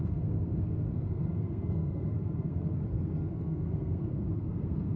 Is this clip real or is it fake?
fake